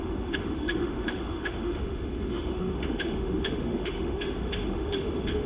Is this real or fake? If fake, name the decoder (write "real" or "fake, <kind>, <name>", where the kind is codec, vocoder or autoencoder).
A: fake, autoencoder, DAC-VAE